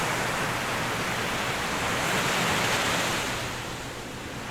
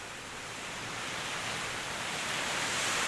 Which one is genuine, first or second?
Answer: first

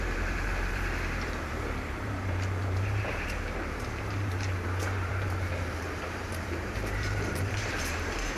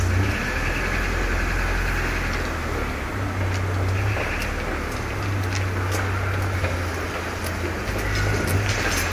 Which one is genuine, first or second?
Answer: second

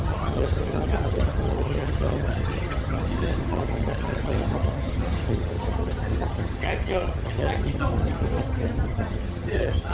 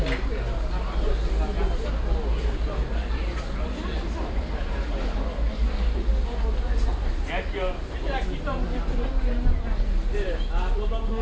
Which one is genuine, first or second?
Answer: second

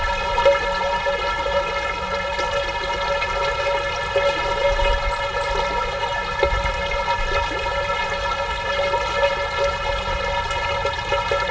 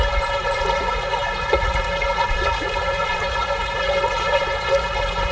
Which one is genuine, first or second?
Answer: first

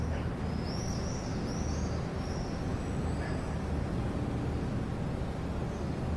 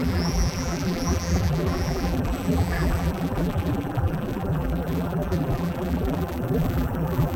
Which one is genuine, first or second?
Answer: first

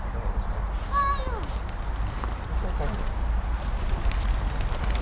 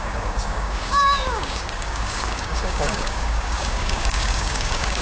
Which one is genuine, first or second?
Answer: first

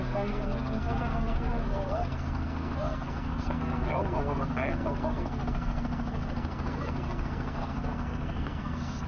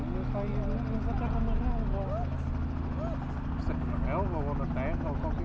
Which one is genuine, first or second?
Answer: second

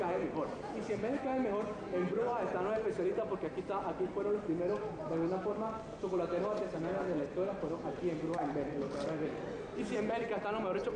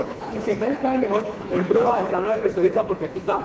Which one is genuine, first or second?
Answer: first